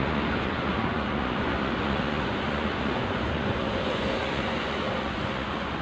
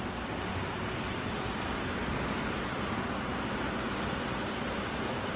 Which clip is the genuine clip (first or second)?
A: second